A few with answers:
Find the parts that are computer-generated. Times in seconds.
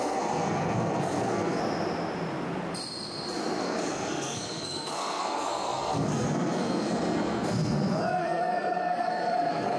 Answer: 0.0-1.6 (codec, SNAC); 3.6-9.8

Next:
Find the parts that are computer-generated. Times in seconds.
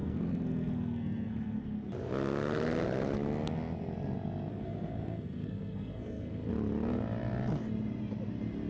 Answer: 0.0-1.9 (codec, SNAC); 4.5-6.5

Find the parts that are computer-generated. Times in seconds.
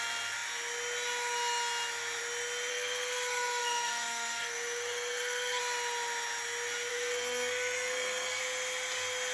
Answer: 2.7-5.6 (codec, SNAC); 6.9-8.4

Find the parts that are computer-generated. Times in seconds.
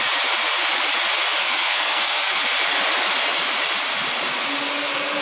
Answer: 1.4-2.4 (codec, SNAC)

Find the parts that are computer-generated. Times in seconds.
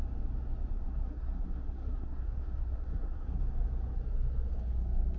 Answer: 0.7-3.4 (codec, SNAC)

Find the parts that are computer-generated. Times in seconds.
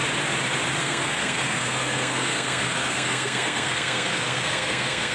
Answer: 0.8-5.1 (codec, SNAC)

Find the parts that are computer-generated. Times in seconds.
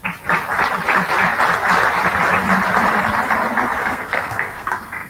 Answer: 3.8-5.1 (codec, SNAC)